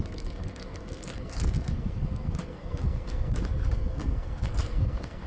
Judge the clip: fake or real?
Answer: fake